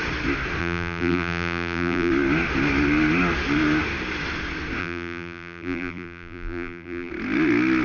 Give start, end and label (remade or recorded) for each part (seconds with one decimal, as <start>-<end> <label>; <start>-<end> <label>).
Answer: 0.0-0.6 recorded; 0.6-2.1 remade; 2.1-4.8 recorded; 4.8-7.1 remade; 7.1-7.8 recorded